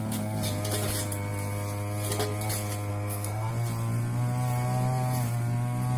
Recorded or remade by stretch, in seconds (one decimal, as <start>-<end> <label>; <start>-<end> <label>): 0.0-2.9 recorded; 2.9-3.5 remade; 3.5-6.0 recorded